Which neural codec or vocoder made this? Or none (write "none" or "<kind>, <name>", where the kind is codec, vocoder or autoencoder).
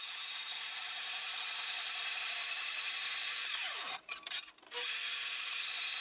vocoder, BigVGAN v2